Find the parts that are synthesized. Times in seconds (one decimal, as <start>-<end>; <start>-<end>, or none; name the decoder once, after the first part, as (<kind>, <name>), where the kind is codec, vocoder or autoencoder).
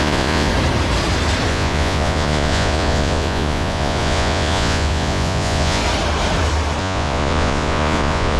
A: 0.0-0.5 (vocoder, Vocos); 1.5-5.8; 6.8-8.4